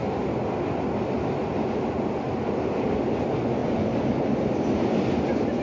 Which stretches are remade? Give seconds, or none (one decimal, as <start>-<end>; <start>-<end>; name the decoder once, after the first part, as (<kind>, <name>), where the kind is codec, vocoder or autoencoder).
none